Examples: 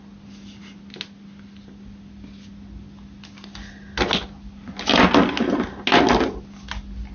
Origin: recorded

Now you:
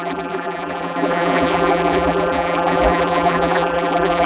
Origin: remade